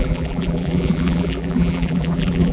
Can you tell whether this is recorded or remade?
remade